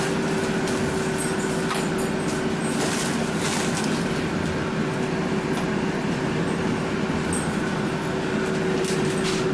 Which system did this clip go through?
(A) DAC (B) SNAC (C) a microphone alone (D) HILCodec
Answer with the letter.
C